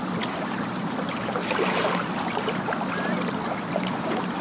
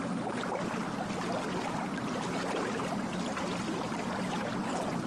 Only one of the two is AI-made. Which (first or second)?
first